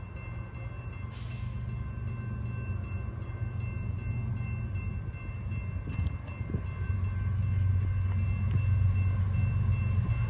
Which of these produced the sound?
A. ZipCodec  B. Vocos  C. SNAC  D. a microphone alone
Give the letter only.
D